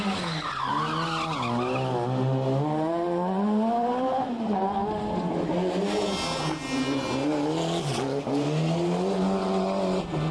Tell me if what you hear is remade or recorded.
recorded